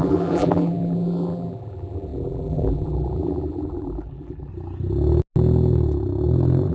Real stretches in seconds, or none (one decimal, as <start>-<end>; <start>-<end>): 4.5-6.7